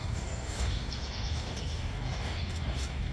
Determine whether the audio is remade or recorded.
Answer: remade